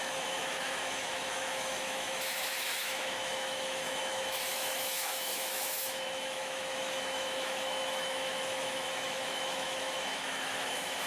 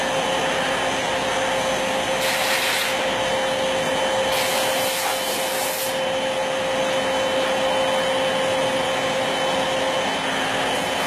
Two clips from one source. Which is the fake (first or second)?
first